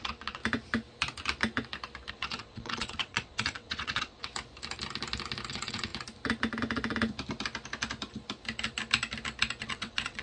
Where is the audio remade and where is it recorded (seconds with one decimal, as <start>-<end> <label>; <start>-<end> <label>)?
0.0-0.4 remade; 0.4-2.1 recorded; 2.1-4.3 remade; 4.3-5.5 recorded; 5.5-5.9 remade; 5.9-9.6 recorded; 9.6-10.2 remade